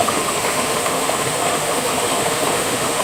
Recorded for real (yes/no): no